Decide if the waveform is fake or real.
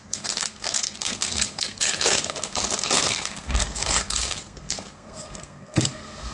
fake